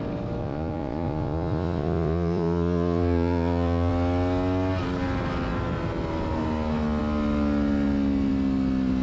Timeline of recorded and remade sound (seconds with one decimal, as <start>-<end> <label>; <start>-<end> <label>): 0.0-0.4 recorded; 0.4-3.9 remade; 3.9-9.0 recorded